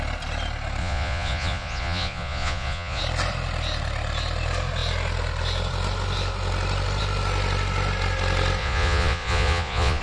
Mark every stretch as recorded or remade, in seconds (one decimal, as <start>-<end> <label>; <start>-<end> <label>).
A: 0.0-0.8 recorded; 0.8-3.0 remade; 3.0-8.6 recorded; 8.6-10.0 remade

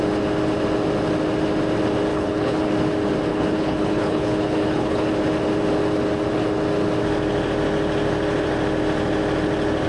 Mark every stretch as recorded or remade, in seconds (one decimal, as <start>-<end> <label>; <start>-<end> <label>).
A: 0.0-2.1 recorded; 2.1-2.7 remade; 2.7-3.3 recorded; 3.3-5.1 remade; 5.1-9.9 recorded

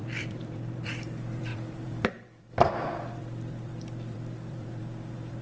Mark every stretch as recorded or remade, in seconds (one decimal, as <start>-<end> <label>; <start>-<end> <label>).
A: 0.0-5.4 remade

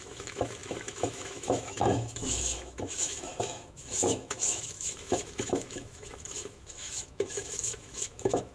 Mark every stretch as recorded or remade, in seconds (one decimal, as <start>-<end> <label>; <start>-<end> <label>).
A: 0.0-8.5 remade

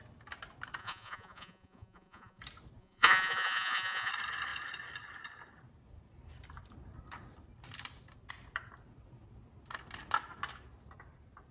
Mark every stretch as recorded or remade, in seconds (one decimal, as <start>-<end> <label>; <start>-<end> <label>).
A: 0.0-0.8 recorded; 0.8-2.4 remade; 2.4-2.8 recorded; 2.8-4.1 remade; 4.1-11.5 recorded

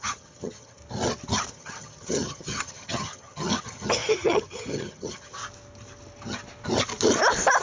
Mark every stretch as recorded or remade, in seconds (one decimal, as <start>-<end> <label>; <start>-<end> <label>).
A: 0.0-0.8 remade; 0.8-1.5 recorded; 1.5-5.4 remade; 5.4-7.6 recorded